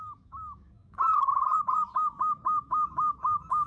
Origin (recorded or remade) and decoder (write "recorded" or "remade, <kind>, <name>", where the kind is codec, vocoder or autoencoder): remade, autoencoder, DAC-VAE